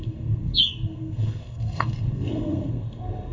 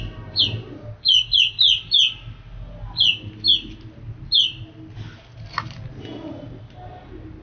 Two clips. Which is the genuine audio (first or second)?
second